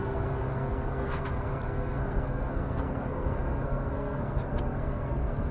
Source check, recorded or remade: remade